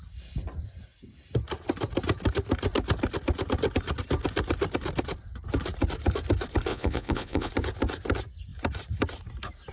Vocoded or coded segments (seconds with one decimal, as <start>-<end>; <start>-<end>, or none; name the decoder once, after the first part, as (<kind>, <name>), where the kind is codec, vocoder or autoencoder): 6.7-7.5 (vocoder, Vocos)